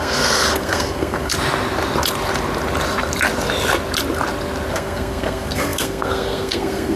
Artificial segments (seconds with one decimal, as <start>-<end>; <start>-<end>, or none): 0.0-1.3; 4.7-7.0

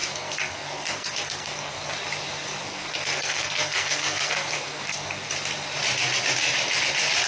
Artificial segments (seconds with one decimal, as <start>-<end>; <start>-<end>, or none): 0.0-1.9; 2.6-5.3

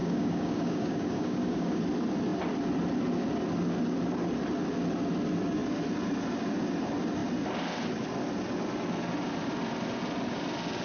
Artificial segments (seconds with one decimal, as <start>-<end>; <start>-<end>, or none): 0.0-1.8

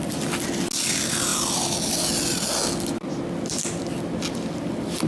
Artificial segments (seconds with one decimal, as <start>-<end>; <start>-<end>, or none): none